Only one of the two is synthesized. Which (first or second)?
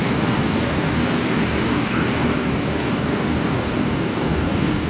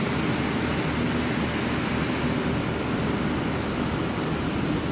first